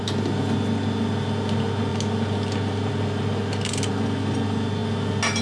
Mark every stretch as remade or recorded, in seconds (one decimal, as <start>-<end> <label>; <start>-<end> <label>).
0.0-5.4 recorded